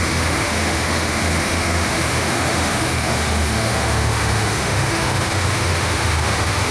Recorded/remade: remade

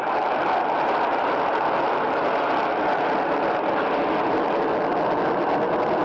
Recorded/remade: recorded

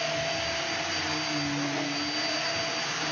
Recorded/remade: recorded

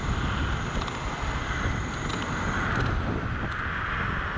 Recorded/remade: recorded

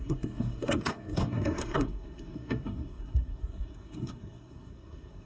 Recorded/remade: remade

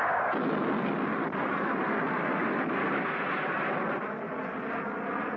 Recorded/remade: recorded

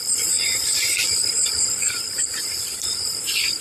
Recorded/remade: remade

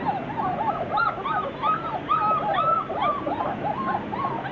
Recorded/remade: recorded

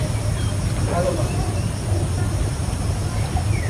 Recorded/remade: recorded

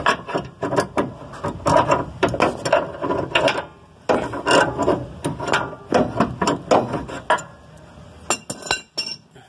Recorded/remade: recorded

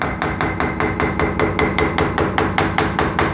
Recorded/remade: recorded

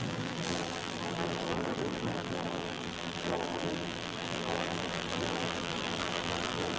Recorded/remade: remade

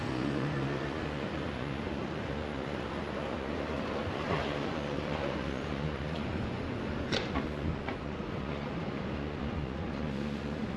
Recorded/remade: remade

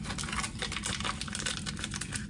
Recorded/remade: recorded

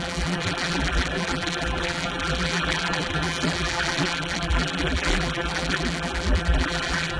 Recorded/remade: remade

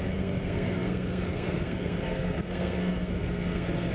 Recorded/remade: remade